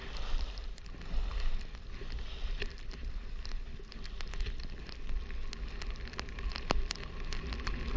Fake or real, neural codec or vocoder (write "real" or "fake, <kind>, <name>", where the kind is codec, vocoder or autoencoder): real